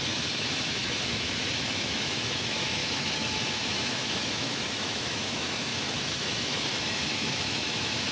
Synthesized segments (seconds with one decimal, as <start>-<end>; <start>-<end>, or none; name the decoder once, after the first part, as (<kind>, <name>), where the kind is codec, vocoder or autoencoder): 0.0-8.1 (autoencoder, DAC-VAE)